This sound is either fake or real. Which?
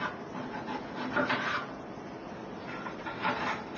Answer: real